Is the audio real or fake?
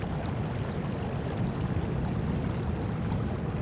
real